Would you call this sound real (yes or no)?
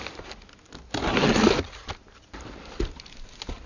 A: yes